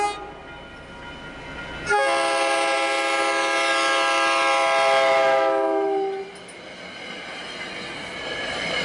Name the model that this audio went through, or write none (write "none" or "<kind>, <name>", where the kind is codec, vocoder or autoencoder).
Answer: none